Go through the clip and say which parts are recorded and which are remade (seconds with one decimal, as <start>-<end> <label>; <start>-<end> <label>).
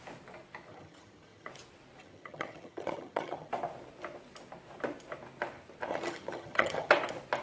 0.0-0.7 recorded; 0.7-1.5 remade; 1.5-2.0 recorded; 2.0-3.5 remade; 3.5-5.9 recorded; 5.9-6.9 remade; 6.9-7.4 recorded